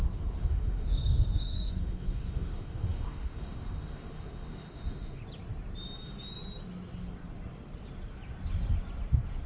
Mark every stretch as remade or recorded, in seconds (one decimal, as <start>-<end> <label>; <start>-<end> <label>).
0.0-5.2 remade; 5.2-9.5 recorded